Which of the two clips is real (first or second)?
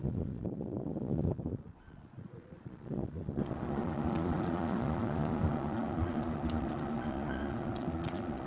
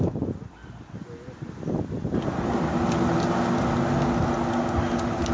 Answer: second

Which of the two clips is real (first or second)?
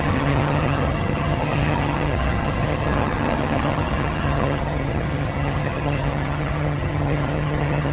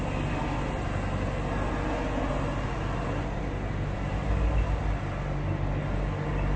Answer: second